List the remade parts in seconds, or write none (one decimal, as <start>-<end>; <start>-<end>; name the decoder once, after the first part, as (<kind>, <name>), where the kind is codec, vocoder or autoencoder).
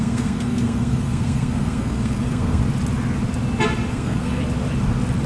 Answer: 0.0-2.6 (codec, SNAC); 3.9-4.4